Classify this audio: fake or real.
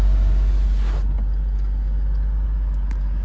real